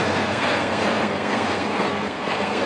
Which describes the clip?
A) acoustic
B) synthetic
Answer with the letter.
B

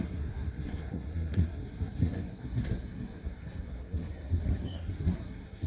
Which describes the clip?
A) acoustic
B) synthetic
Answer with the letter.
B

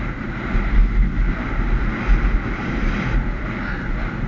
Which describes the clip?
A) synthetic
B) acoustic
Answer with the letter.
B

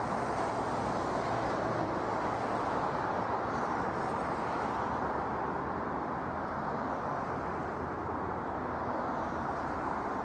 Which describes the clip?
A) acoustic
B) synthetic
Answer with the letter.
A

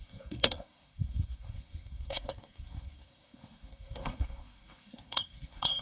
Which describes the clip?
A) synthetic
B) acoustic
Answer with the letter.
A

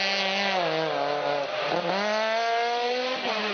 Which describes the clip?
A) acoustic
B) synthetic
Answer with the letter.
A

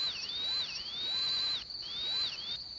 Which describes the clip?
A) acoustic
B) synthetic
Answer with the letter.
A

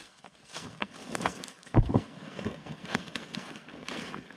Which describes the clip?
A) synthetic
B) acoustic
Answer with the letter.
A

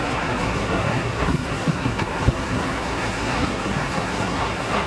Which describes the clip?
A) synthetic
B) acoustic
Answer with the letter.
A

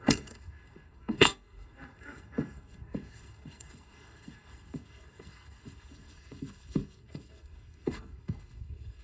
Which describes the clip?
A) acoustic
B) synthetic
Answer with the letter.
B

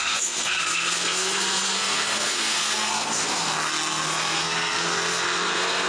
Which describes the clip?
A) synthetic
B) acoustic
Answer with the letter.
A